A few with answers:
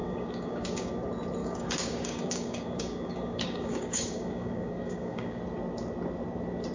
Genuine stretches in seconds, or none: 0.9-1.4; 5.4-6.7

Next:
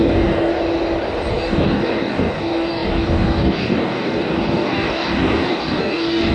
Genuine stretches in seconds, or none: 0.5-1.3

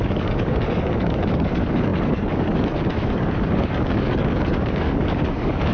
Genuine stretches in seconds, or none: none

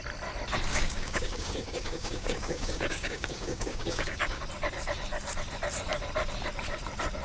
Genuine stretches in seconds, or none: 0.0-0.7; 4.4-7.2

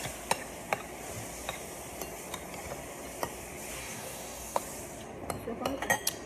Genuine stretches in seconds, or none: 0.0-3.8; 4.6-6.3

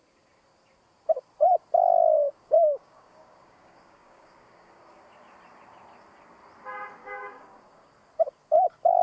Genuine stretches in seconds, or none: 0.0-2.3; 5.0-7.0; 7.9-9.0